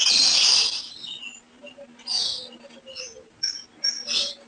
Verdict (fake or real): real